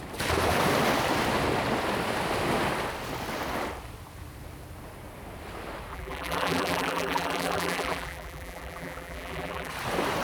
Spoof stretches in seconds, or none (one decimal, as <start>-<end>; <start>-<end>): 5.9-9.7